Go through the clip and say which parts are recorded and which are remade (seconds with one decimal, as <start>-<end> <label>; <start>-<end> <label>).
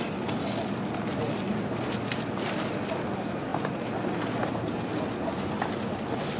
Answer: 0.0-6.4 recorded